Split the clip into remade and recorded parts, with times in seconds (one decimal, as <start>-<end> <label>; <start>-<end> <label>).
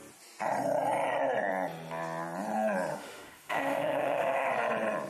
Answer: 0.0-2.9 recorded; 2.9-4.5 remade; 4.5-5.1 recorded